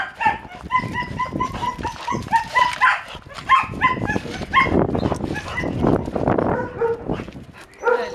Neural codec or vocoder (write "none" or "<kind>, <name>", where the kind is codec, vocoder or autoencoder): none